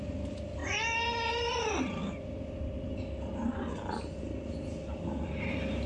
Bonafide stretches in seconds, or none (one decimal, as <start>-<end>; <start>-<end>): 0.0-5.9